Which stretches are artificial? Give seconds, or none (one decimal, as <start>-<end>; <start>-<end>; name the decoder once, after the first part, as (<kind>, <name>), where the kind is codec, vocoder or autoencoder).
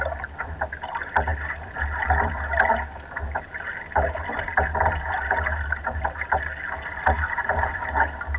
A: none